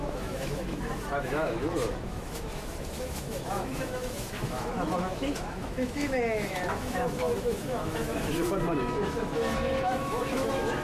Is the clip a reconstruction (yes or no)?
yes